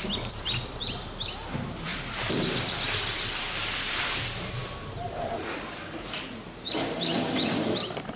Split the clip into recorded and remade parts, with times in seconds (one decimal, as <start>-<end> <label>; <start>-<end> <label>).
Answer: 0.0-8.2 remade